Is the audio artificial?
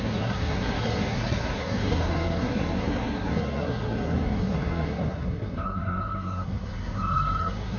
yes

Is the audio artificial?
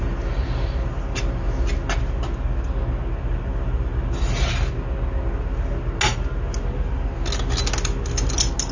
no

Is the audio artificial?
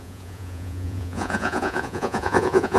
yes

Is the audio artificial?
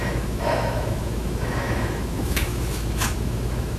yes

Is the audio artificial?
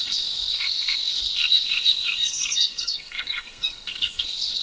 yes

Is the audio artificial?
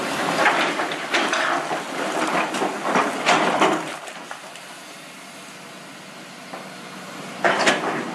no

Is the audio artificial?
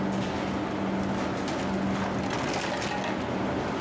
no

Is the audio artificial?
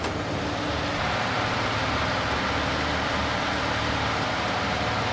no